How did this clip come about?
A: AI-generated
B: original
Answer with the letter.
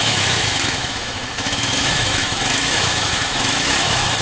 A